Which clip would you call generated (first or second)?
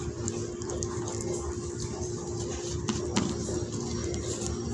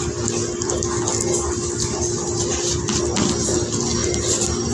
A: first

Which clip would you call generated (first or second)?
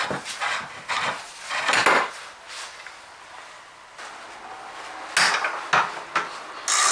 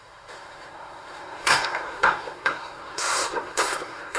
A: second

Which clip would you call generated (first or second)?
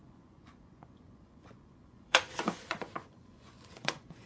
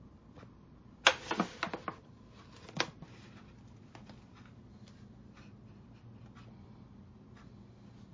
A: first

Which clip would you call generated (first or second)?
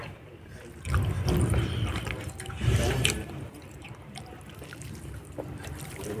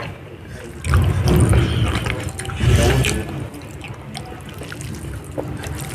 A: first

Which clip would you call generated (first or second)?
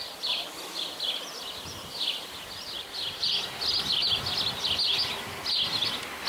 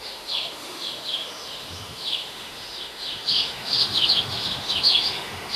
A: second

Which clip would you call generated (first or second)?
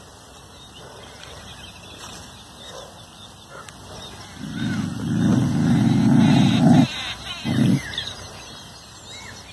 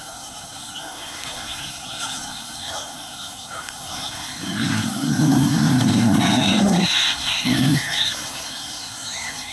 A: second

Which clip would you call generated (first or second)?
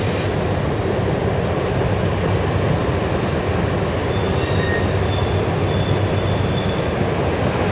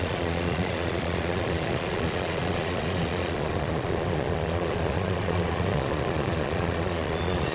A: second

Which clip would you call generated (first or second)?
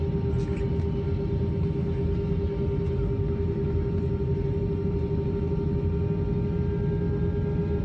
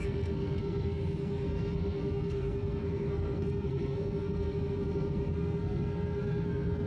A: second